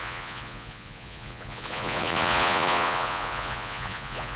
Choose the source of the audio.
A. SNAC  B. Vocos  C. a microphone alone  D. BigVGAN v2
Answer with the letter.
B